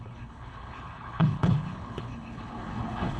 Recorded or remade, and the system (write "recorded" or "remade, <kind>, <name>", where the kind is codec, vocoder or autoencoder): remade, codec, HILCodec